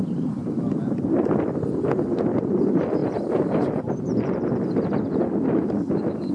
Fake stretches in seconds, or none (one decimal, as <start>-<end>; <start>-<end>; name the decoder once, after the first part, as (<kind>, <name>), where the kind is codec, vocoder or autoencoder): none